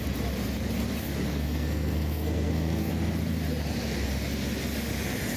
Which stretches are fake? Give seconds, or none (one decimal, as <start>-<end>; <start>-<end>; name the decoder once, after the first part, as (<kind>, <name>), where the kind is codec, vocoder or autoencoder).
1.3-2.9 (codec, SNAC)